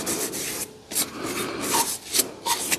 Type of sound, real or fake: real